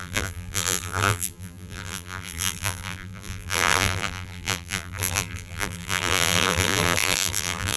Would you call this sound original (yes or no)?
no